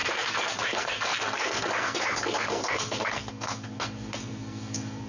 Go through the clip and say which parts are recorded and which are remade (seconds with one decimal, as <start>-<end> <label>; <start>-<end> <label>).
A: 0.0-5.1 remade